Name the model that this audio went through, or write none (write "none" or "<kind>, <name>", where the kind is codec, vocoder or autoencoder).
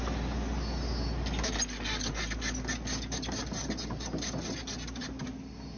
none